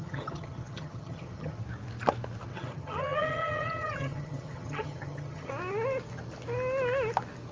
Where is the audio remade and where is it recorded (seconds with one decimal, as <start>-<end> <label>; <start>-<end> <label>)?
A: 0.0-1.6 remade; 1.6-2.5 recorded; 2.5-5.5 remade; 5.5-7.5 recorded